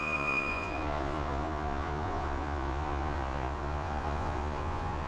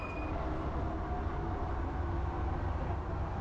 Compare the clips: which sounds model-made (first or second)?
first